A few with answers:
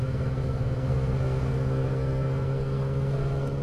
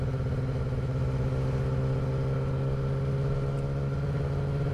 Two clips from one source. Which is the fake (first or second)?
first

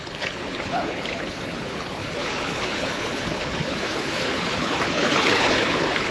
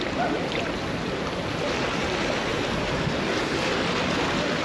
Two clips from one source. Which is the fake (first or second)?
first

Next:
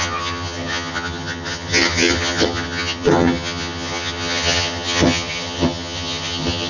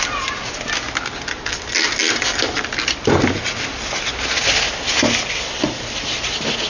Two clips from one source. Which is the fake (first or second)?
first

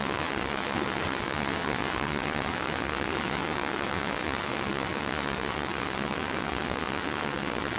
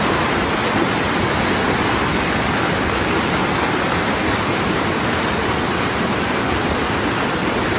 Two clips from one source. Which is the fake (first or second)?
first